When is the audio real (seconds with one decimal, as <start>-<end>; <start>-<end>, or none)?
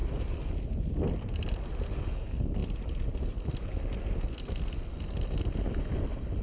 0.0-6.4